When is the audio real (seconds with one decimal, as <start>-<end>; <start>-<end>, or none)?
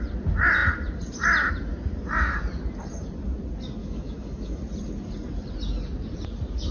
0.0-3.8; 4.6-6.7